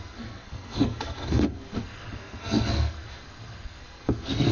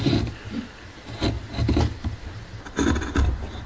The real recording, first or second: second